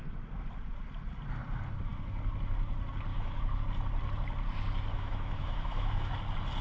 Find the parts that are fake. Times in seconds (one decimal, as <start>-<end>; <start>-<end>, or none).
3.1-3.6; 4.9-6.1